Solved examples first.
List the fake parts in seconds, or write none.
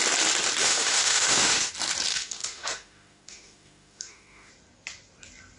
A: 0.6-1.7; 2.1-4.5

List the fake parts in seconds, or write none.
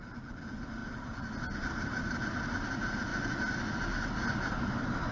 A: none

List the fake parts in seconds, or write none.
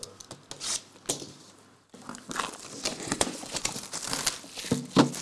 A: 2.9-3.7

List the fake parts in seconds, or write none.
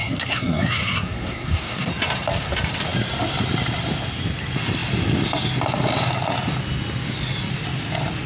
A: 0.0-1.9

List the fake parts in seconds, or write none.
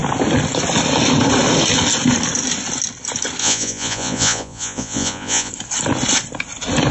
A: 3.4-5.5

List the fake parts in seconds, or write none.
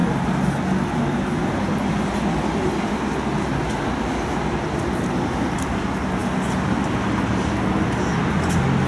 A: none